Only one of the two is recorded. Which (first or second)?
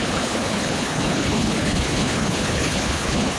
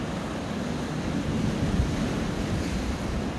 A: second